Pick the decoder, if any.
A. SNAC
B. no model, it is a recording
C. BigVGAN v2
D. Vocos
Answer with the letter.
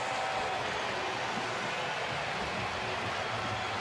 B